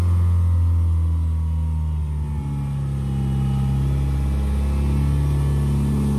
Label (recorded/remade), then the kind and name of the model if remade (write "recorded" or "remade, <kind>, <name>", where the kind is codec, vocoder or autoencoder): recorded